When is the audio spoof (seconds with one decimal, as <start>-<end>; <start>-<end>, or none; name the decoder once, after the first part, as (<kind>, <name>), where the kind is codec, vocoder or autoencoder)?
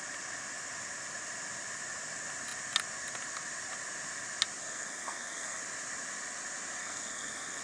4.6-5.6 (codec, SNAC); 6.8-7.6